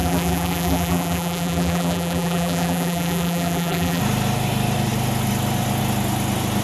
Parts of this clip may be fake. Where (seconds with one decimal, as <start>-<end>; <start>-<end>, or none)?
0.0-4.0